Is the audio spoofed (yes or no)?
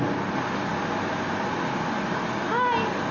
no